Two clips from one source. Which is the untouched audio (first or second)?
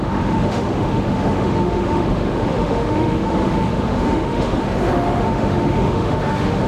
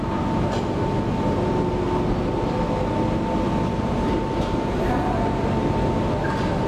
second